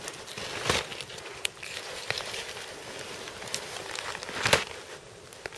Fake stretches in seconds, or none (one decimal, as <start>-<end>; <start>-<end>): 0.9-4.1

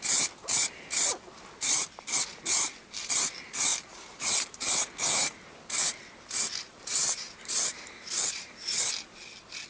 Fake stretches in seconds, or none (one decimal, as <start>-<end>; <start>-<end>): 3.7-4.9; 6.7-8.9

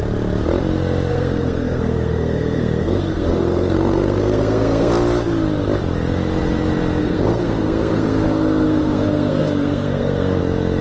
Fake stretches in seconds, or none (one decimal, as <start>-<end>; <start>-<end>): 1.1-4.9; 7.0-10.4

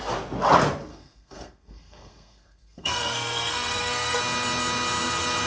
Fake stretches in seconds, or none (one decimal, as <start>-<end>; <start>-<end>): 0.9-4.2

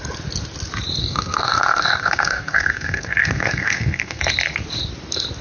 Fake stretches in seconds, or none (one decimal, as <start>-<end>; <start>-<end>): 1.0-4.2

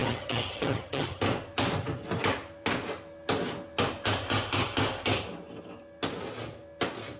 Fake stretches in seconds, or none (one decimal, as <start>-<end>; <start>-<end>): 0.0-1.2

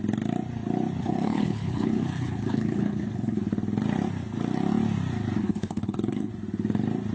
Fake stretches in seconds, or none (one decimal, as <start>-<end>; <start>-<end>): 1.0-3.4; 5.4-6.3

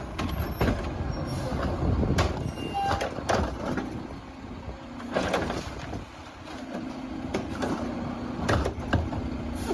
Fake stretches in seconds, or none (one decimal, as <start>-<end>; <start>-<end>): none